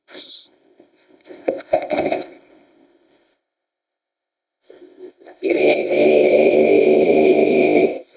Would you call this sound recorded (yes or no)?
no